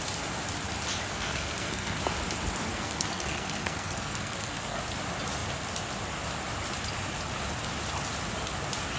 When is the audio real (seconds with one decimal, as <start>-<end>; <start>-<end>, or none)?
0.0-1.1; 2.0-2.7; 4.8-9.0